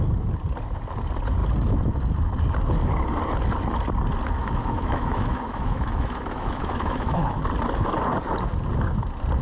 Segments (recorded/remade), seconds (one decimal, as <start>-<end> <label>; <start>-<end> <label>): 0.0-4.4 recorded; 4.4-7.4 remade; 7.4-9.4 recorded